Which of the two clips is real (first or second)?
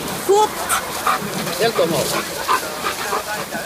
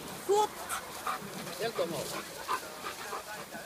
first